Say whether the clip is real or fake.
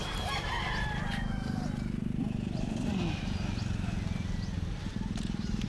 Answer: real